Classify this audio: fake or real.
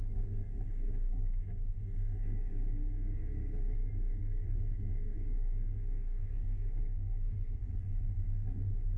fake